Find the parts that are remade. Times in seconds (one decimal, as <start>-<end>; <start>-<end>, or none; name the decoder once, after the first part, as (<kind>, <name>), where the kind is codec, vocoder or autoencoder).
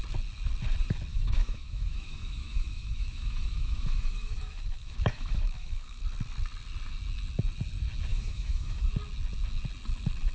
1.1-6.0 (autoencoder, DAC-VAE); 8.1-8.8